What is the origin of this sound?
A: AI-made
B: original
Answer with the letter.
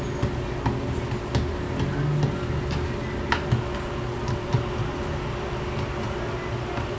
B